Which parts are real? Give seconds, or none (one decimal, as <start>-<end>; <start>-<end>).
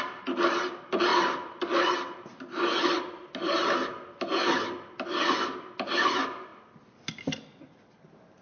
0.0-8.4